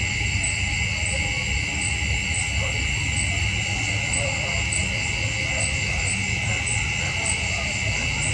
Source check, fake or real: real